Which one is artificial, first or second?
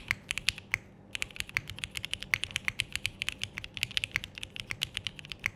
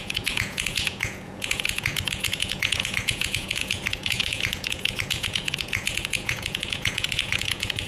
second